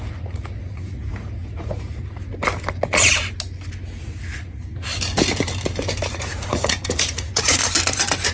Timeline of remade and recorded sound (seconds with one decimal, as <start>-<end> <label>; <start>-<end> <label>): 0.0-2.3 remade; 2.3-4.0 recorded; 4.0-4.9 remade; 4.9-6.1 recorded; 6.1-7.6 remade; 7.6-8.3 recorded